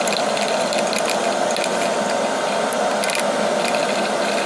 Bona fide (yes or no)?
yes